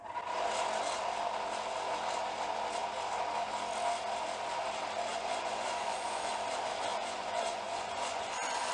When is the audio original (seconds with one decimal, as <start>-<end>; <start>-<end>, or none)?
0.0-5.1; 6.3-6.9

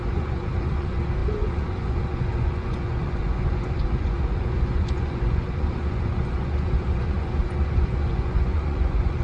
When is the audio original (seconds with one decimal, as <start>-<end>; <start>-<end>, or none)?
none

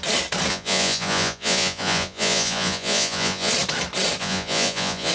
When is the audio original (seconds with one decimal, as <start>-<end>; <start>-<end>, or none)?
0.0-0.5; 3.5-4.2

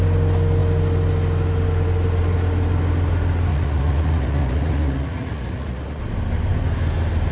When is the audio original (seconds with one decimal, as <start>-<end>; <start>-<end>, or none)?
0.0-3.5; 6.0-7.3

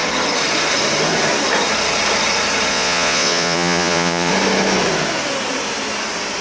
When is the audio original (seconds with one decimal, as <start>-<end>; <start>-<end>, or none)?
0.0-2.7; 4.3-6.4